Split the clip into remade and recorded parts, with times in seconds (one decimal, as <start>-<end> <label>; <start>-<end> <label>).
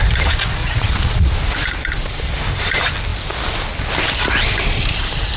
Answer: 0.0-0.6 recorded; 0.6-1.3 remade; 1.3-5.4 recorded